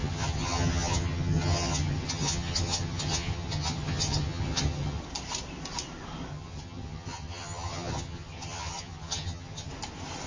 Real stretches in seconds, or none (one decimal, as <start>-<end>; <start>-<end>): 5.0-6.3; 9.7-10.3